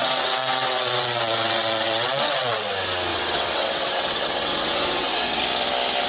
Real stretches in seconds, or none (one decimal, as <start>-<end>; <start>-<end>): 2.7-3.1; 5.4-6.1

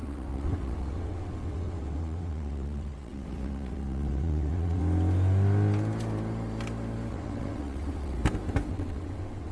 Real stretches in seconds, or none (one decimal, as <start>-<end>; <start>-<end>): 4.8-7.1; 8.2-8.7

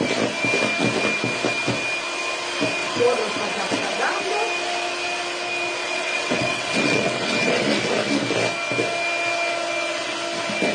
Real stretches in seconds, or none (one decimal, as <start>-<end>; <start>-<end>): 0.0-2.8; 4.2-5.8; 7.6-10.7

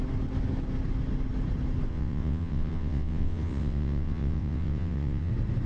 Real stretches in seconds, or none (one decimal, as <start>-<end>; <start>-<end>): 0.0-1.9; 5.3-5.7

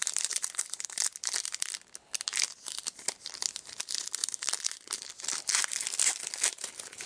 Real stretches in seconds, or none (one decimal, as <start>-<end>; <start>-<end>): 0.0-7.1

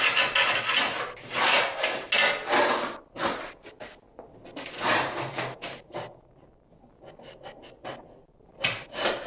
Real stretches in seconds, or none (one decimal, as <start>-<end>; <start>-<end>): 0.0-9.3